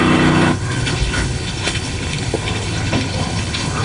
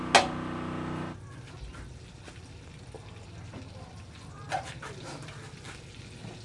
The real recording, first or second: second